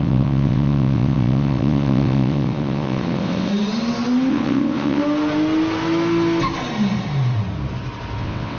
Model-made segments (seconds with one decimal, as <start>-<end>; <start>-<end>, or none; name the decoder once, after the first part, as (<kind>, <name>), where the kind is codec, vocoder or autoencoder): 0.0-3.5 (vocoder, WaveNeXt); 4.3-5.0; 8.2-8.6